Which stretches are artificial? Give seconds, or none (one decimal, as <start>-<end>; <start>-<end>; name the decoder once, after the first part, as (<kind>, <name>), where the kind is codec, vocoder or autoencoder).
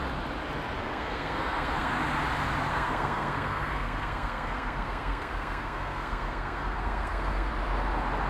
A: 0.8-1.9 (codec, SNAC); 2.7-7.5